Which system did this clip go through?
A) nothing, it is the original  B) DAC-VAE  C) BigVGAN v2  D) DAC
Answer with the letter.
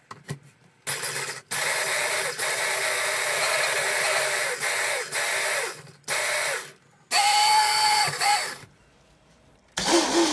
A